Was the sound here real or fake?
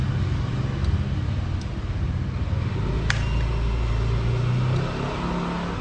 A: real